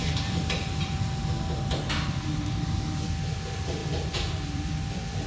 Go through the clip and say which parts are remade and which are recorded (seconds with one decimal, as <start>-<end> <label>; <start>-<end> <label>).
0.0-1.2 remade; 1.2-3.8 recorded; 3.8-5.3 remade

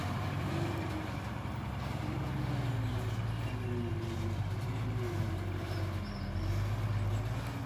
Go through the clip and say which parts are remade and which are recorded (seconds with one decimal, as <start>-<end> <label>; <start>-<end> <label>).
0.0-2.4 remade; 2.4-2.9 recorded; 2.9-3.5 remade; 3.5-3.9 recorded; 3.9-5.8 remade; 5.8-7.7 recorded

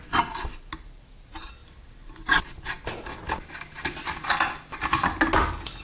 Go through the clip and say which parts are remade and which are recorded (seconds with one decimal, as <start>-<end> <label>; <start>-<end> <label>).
0.0-5.8 recorded